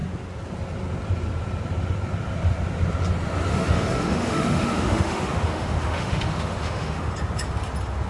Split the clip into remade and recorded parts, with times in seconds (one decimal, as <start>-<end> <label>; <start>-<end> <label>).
0.0-3.5 recorded; 3.5-7.1 remade; 7.1-8.1 recorded